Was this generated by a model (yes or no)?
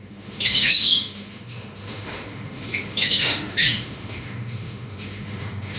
yes